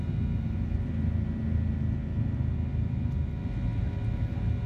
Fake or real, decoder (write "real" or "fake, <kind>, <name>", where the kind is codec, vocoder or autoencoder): real